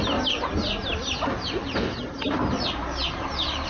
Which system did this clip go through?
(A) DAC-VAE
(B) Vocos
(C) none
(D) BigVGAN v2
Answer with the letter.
C